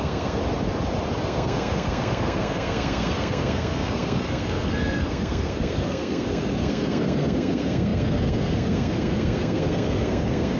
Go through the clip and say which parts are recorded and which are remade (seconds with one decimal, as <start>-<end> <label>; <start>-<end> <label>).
0.0-0.4 remade; 0.4-1.2 recorded; 1.2-10.6 remade